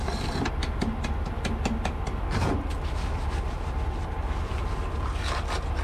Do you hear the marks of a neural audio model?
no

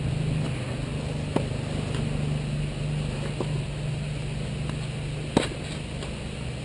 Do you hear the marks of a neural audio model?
no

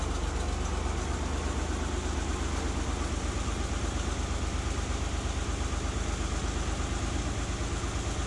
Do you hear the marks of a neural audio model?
no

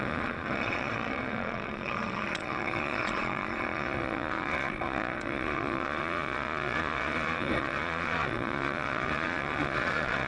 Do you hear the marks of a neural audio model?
yes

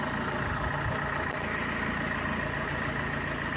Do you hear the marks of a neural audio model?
no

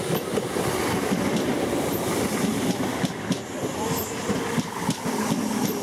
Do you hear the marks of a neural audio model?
no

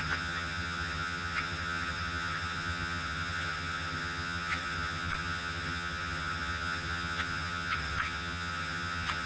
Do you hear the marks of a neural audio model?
yes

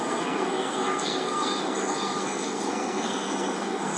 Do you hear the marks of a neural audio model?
yes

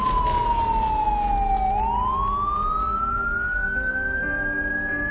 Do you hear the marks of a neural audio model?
no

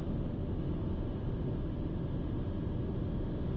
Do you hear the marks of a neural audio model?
no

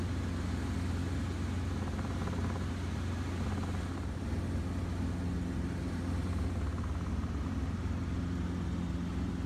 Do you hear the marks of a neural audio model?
no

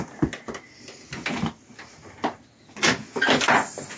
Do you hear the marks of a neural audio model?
no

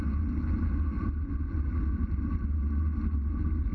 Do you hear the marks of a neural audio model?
no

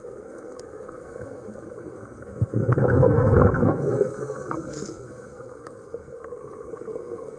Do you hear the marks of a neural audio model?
yes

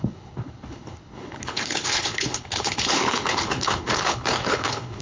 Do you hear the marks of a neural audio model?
yes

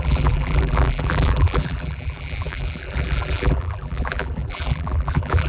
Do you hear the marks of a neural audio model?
yes